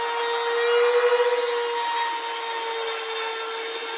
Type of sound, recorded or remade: recorded